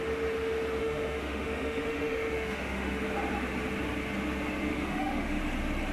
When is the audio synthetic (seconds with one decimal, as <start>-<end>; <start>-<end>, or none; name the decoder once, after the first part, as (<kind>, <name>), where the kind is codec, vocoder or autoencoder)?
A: 0.8-3.0 (autoencoder, DAC-VAE); 4.7-5.4